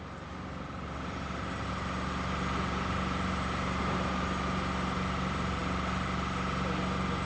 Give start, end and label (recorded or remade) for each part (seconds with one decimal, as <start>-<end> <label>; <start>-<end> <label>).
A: 0.0-7.3 recorded